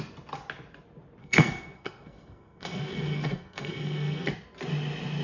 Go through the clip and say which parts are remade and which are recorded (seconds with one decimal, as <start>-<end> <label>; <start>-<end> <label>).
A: 0.0-1.2 recorded; 1.2-4.3 remade; 4.3-5.2 recorded